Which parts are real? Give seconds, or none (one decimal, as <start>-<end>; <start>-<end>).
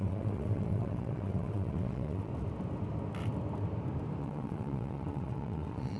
2.3-4.2